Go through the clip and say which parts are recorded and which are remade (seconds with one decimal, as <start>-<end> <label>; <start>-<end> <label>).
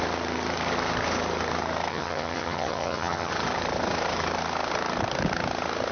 0.0-1.9 recorded; 1.9-3.3 remade; 3.3-5.9 recorded